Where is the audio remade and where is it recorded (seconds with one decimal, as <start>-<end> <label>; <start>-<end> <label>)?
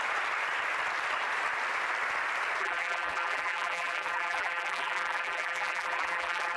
0.0-2.6 recorded; 2.6-6.6 remade